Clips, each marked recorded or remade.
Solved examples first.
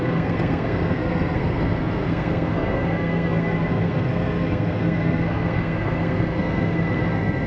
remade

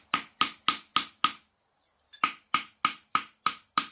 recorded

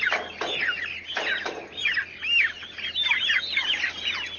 recorded